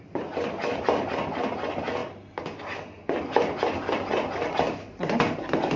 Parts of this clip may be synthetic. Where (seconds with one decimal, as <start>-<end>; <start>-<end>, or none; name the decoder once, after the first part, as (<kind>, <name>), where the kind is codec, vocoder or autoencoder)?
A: none

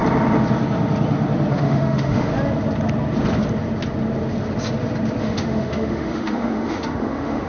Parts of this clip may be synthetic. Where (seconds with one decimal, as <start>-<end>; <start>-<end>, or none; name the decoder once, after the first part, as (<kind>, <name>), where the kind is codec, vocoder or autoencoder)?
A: 1.5-2.3 (autoencoder, DAC-VAE); 5.2-7.5

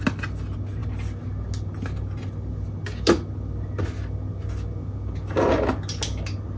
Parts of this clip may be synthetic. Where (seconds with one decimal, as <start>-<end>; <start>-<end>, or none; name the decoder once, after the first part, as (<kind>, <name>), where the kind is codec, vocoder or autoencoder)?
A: none

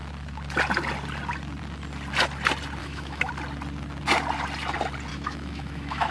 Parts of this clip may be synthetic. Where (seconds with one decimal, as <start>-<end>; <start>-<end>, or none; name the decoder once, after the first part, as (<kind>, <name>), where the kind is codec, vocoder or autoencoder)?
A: 2.8-3.3 (autoencoder, DAC-VAE); 5.1-6.1

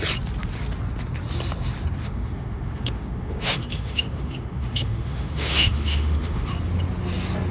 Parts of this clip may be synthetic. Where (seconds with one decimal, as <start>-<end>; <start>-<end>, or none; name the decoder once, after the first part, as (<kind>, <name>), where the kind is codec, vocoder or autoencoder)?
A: 2.0-6.5 (autoencoder, DAC-VAE)

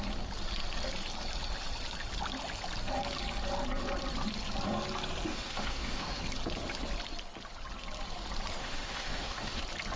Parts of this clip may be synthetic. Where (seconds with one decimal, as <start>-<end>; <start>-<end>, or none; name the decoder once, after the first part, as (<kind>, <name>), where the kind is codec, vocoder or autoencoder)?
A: 5.3-6.2 (autoencoder, DAC-VAE); 8.6-9.6